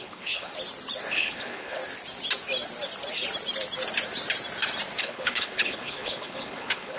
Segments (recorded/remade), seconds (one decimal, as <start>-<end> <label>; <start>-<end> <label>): 0.0-0.5 remade; 0.5-1.1 recorded; 1.1-1.8 remade; 1.8-5.0 recorded; 5.0-7.0 remade